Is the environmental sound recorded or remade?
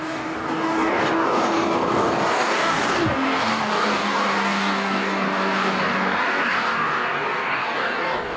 remade